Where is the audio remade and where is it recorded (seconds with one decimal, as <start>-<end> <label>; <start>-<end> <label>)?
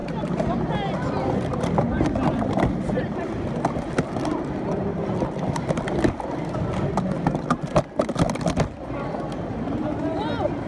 0.0-10.7 recorded